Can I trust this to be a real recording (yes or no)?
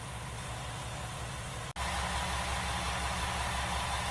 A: yes